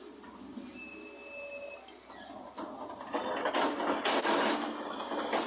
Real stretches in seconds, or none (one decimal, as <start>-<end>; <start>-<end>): 0.0-5.5